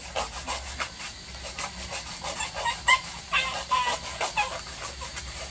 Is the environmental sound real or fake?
real